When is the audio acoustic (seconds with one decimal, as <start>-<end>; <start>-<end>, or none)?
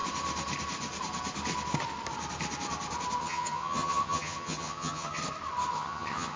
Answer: 0.0-3.2; 5.2-5.7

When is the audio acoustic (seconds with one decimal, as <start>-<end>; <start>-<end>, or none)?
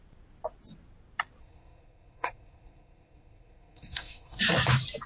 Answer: 0.0-1.4; 4.4-5.1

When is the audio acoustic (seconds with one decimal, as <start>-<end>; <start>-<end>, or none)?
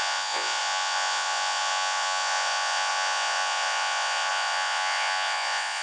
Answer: none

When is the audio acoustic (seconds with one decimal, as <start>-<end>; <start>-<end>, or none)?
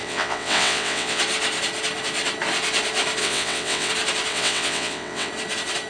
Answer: 1.2-3.2; 3.9-4.3; 5.3-5.9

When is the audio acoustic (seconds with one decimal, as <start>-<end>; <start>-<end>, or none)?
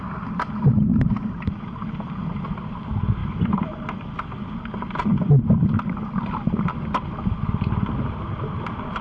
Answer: 0.0-0.9; 2.4-3.2; 4.1-9.0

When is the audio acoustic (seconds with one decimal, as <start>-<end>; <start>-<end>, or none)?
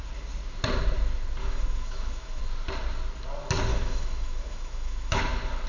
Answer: 0.0-1.4; 2.4-3.7; 5.2-5.7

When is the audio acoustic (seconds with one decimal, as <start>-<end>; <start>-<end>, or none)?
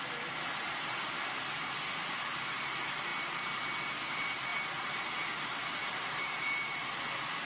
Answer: 0.0-5.8; 6.8-7.4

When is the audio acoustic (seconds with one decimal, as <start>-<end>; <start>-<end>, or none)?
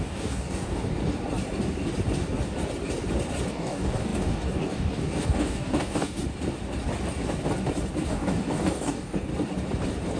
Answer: 1.0-3.5; 6.2-8.1; 9.3-10.2